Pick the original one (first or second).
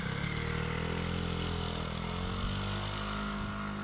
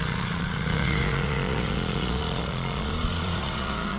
first